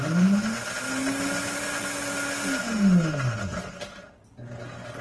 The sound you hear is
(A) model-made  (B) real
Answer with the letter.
B